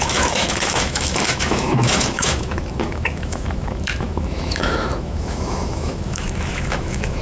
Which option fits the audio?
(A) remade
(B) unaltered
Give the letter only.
A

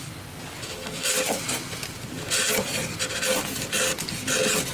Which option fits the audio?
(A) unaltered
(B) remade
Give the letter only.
A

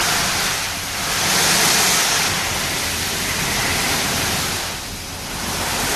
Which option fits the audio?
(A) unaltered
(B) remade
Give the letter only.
A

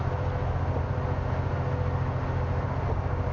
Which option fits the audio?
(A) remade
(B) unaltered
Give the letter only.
B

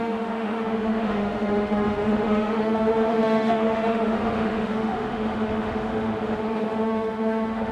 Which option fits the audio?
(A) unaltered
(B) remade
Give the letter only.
B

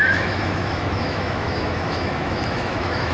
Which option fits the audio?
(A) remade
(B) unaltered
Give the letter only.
A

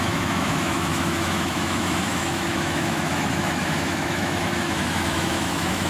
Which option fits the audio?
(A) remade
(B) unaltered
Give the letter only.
A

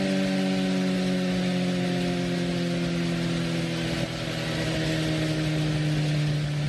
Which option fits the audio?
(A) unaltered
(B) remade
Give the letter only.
A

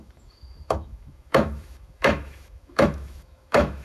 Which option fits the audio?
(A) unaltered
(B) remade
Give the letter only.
B